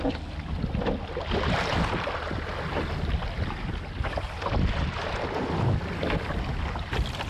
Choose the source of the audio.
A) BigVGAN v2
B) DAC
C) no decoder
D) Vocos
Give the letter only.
C